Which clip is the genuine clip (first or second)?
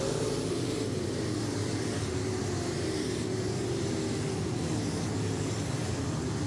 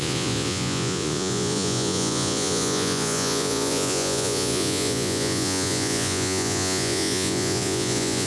first